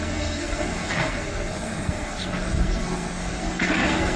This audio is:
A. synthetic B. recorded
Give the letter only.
A